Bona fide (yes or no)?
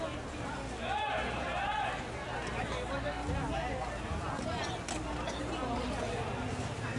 yes